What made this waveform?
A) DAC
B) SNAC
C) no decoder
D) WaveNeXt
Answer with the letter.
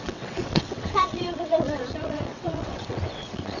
D